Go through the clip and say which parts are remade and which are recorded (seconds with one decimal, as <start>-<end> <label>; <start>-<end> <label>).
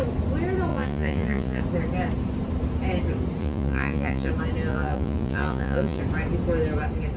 0.0-0.7 recorded; 0.7-1.6 remade; 1.6-3.4 recorded; 3.4-4.3 remade; 4.3-4.7 recorded; 4.7-6.0 remade; 6.0-7.2 recorded